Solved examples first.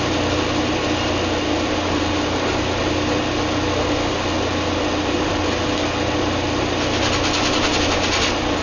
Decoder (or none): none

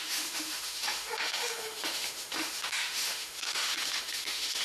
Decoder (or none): autoencoder, DAC-VAE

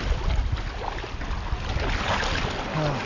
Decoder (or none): none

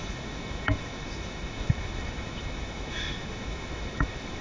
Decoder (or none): autoencoder, DAC-VAE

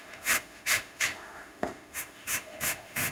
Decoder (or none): autoencoder, DAC-VAE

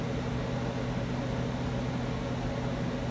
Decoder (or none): none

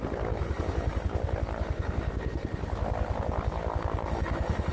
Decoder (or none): none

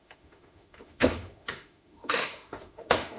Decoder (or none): autoencoder, DAC-VAE